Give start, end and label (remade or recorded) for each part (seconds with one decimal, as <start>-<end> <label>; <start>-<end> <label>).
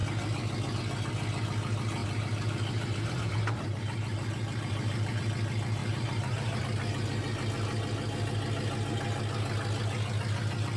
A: 0.0-2.0 recorded; 2.0-5.2 remade; 5.2-5.8 recorded; 5.8-6.6 remade; 6.6-10.8 recorded